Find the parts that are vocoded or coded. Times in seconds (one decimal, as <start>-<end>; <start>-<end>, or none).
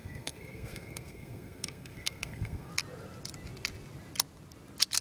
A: 0.0-2.7